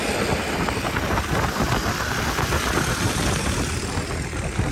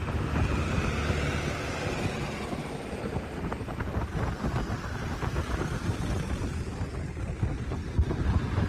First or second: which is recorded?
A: first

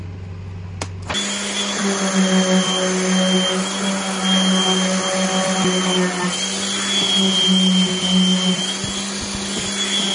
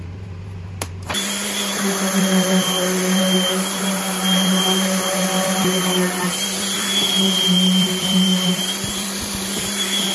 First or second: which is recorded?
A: first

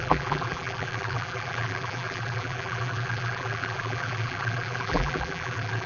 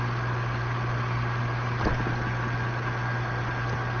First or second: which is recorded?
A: second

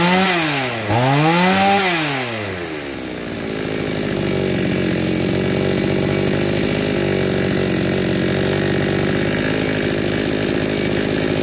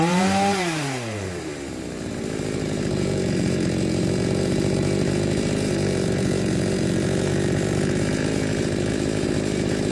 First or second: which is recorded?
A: first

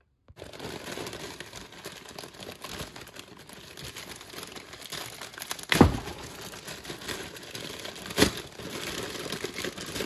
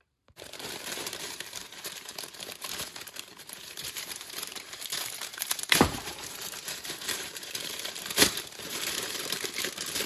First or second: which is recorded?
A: first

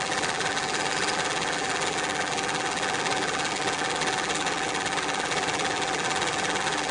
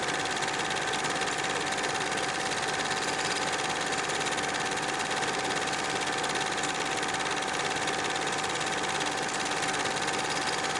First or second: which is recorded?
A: second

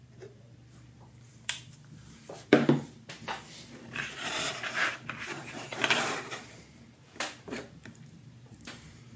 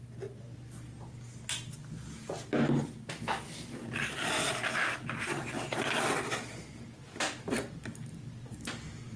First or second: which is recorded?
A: second